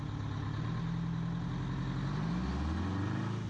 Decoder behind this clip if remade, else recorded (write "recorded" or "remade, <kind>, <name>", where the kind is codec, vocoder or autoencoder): recorded